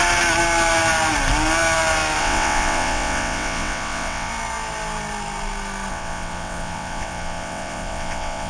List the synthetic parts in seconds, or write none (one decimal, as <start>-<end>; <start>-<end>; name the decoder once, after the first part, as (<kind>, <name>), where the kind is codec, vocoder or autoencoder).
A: 2.2-4.3 (vocoder, WaveNeXt); 5.9-8.5